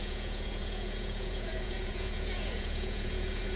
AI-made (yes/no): yes